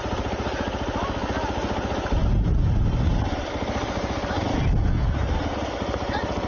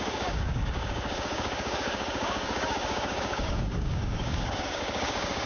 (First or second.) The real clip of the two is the first